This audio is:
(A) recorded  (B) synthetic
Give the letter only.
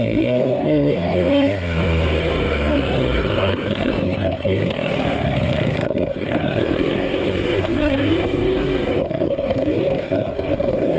B